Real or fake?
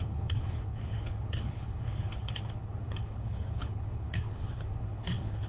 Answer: fake